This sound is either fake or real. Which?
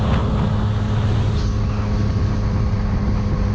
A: real